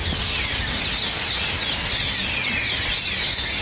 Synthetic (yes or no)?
no